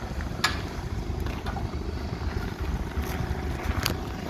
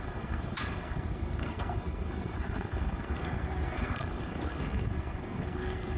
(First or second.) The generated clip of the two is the second